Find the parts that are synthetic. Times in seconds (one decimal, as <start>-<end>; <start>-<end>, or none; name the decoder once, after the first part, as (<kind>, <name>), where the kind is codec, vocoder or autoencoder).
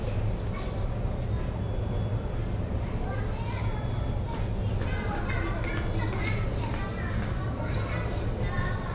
none